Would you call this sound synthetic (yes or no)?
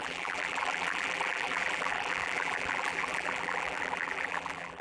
yes